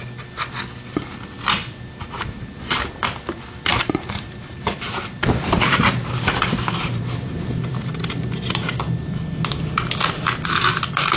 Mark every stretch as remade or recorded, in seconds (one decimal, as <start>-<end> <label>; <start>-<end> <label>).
0.0-1.6 recorded; 1.6-2.9 remade; 2.9-3.7 recorded; 3.7-8.8 remade; 8.8-11.2 recorded